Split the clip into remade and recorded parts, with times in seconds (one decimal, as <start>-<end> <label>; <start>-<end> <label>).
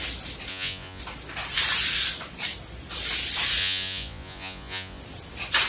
0.0-0.5 recorded; 0.5-1.0 remade; 1.0-3.6 recorded; 3.6-5.0 remade; 5.0-5.7 recorded